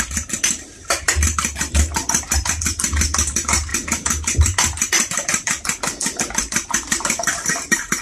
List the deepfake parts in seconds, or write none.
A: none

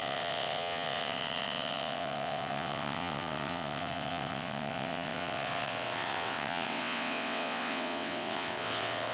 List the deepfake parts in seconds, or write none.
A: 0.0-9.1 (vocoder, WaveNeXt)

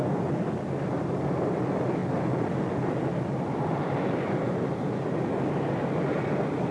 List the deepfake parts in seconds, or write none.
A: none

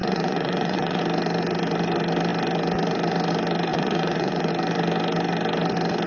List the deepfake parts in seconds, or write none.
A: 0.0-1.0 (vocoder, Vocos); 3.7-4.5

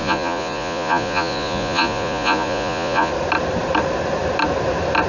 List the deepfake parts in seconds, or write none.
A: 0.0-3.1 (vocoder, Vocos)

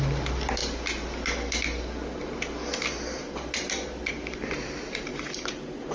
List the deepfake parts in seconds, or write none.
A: 0.0-0.6 (vocoder, BigVGAN v2); 4.1-5.1